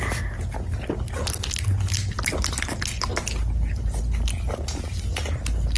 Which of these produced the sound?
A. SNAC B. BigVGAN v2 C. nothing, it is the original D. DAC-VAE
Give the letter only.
C